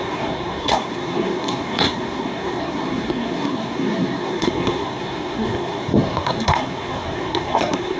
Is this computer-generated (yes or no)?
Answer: yes